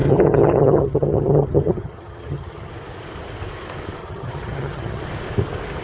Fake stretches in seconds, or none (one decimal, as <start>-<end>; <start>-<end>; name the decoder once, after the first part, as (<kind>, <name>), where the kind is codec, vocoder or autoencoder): 0.0-2.7 (vocoder, HiFi-GAN); 4.0-5.0